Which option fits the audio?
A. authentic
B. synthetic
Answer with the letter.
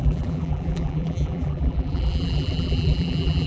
B